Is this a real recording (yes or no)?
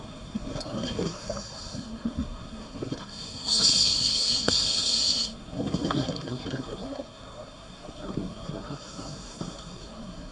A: no